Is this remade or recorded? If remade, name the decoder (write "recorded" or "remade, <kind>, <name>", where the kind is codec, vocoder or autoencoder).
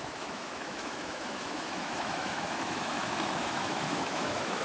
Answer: remade, autoencoder, DAC-VAE